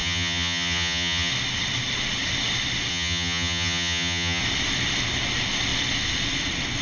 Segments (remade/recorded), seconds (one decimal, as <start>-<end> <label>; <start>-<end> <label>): 0.0-1.3 remade; 1.3-2.9 recorded; 2.9-4.4 remade; 4.4-6.8 recorded